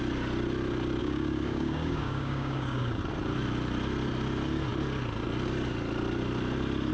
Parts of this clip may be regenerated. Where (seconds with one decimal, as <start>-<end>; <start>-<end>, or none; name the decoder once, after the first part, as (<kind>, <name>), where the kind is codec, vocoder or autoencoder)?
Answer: 1.0-3.0 (codec, DAC)